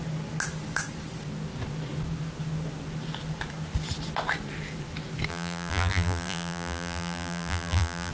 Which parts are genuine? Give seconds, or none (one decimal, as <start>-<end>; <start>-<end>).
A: 0.0-5.3